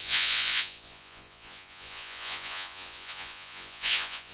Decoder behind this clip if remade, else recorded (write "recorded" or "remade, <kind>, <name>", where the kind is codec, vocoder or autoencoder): remade, vocoder, Vocos